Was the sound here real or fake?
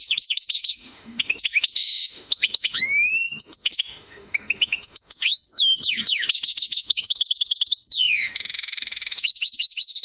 fake